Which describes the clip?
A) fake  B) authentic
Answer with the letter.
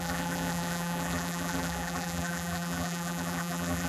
A